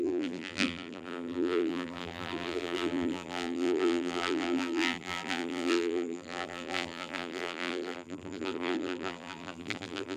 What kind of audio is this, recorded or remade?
remade